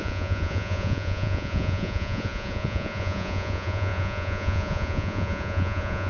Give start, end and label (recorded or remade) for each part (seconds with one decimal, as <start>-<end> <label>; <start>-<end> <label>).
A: 0.0-6.1 remade